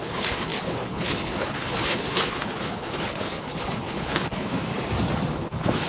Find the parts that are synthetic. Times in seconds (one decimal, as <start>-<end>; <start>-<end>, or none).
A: 0.0-4.7; 5.3-5.9